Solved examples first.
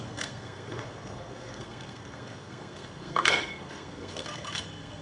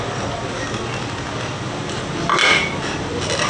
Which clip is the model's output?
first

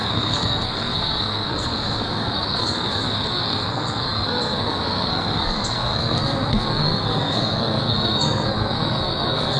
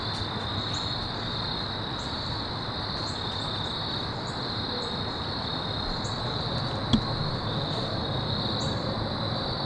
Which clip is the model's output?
first